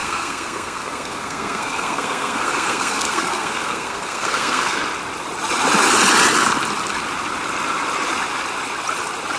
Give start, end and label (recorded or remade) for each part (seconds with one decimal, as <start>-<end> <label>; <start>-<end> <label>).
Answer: 0.0-4.8 remade; 4.8-9.4 recorded